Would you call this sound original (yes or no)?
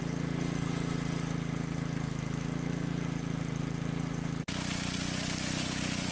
yes